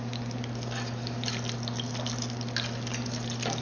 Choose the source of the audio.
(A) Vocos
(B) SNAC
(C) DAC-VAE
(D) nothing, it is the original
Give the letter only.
D